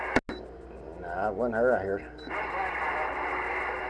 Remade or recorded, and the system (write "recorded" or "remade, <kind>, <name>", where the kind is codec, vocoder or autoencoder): recorded